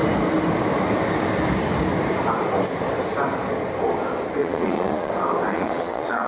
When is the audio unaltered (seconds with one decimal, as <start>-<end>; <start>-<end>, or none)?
0.0-4.4; 5.1-5.5